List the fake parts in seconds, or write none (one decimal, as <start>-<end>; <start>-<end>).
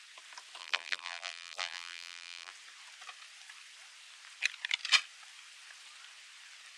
0.6-2.5